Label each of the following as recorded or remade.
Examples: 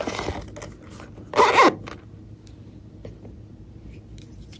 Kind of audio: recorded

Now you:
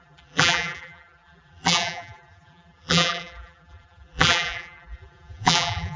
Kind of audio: remade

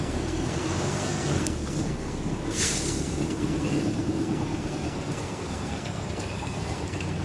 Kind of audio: remade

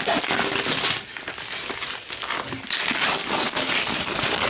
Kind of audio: recorded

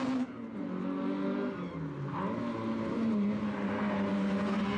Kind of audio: recorded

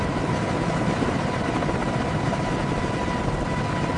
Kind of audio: recorded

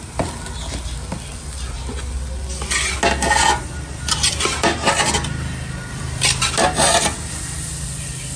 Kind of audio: recorded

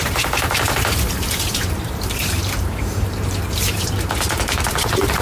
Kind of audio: remade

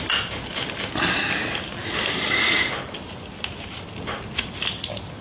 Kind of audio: recorded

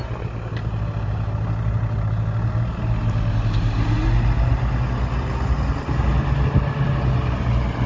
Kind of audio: recorded